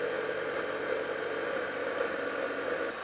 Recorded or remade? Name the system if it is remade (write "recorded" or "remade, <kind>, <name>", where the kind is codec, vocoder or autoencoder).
recorded